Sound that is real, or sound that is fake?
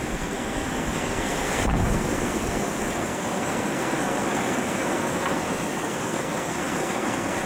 fake